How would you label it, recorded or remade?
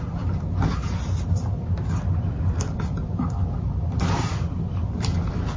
recorded